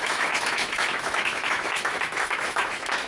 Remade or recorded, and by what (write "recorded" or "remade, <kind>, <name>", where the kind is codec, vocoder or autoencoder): remade, autoencoder, DAC-VAE